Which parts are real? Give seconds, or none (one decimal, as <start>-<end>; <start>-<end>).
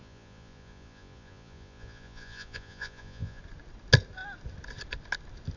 3.4-5.6